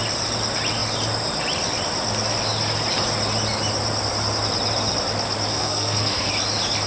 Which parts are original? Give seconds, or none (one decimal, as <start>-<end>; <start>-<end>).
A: 0.0-5.5; 6.3-6.9